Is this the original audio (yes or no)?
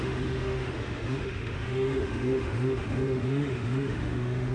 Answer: no